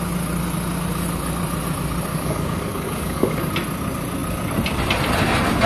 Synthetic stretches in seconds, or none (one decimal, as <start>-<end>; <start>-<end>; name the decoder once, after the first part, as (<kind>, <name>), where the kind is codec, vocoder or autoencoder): 2.1-3.5 (codec, DAC)